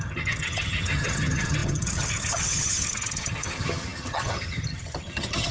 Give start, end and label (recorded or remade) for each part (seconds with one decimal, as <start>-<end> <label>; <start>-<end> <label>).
0.0-5.5 remade